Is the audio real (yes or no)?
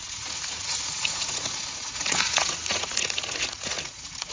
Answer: no